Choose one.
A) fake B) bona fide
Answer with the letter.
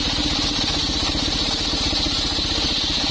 B